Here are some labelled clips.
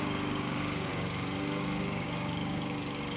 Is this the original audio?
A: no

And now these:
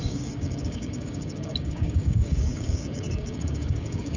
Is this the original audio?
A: no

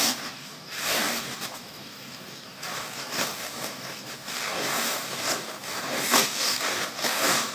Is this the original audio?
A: no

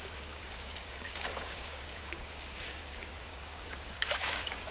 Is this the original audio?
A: no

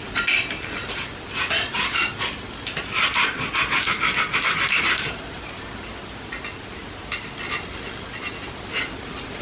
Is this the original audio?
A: yes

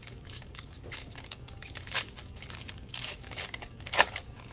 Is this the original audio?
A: no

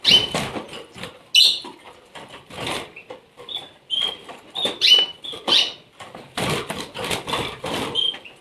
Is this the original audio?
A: yes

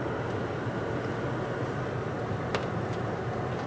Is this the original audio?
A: yes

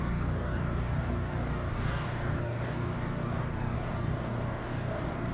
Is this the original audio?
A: no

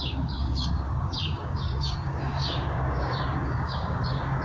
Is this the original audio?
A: no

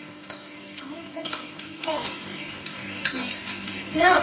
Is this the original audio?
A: no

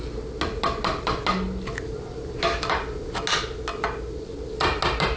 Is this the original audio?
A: yes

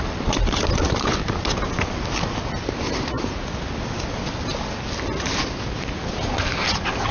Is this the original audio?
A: yes